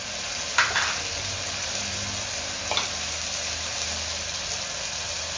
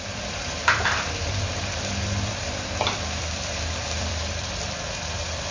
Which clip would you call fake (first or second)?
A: second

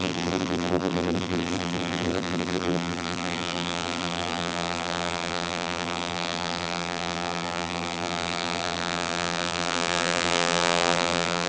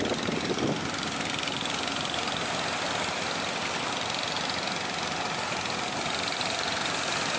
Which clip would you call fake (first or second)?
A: first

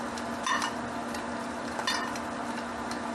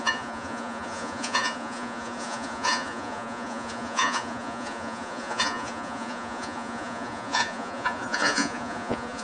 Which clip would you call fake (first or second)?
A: second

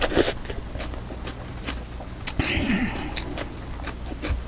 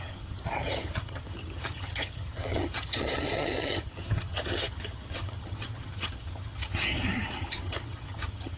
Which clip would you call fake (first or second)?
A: second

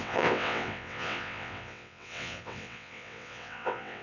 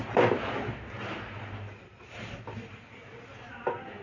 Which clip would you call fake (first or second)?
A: first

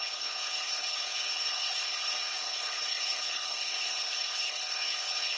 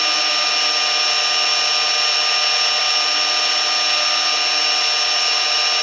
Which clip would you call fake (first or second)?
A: first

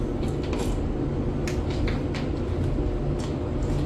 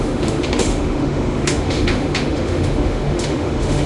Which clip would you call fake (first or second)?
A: second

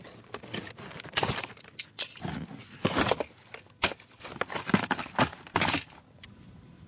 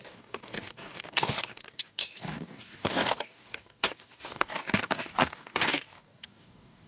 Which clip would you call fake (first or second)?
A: second